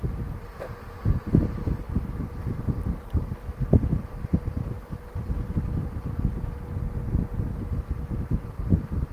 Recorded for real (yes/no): yes